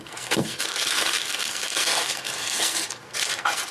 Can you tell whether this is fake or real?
fake